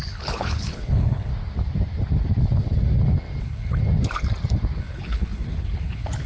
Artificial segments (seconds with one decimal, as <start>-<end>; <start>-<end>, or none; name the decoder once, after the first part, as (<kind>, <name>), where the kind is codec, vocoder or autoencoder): 0.0-1.3 (codec, HILCodec); 3.4-3.8; 4.8-6.3